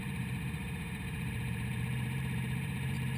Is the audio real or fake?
fake